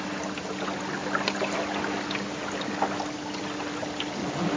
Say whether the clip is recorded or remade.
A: recorded